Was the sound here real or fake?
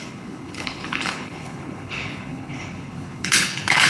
fake